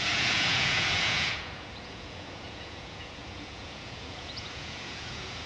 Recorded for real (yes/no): no